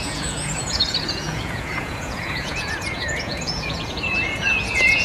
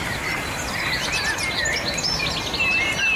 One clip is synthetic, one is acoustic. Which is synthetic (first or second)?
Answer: first